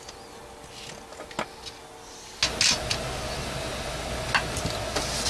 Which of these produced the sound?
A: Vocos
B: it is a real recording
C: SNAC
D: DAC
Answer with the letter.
B